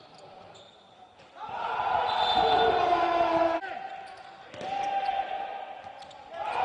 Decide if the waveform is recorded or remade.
recorded